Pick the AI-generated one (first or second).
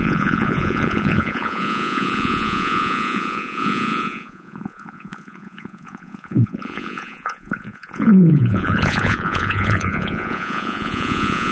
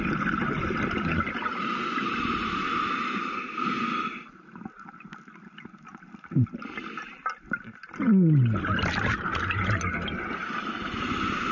first